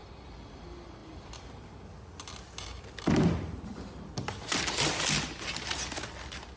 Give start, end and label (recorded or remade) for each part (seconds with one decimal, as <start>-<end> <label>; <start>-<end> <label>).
0.0-6.6 recorded